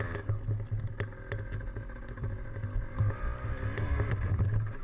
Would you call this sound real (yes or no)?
yes